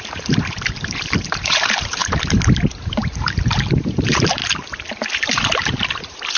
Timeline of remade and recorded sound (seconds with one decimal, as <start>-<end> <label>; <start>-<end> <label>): 0.0-2.0 remade; 2.0-2.7 recorded; 2.7-4.4 remade; 4.4-6.0 recorded; 6.0-6.4 remade